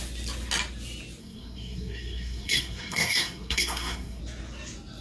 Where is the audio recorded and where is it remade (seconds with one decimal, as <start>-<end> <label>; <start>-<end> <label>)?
0.0-1.2 recorded; 1.2-4.2 remade; 4.2-5.0 recorded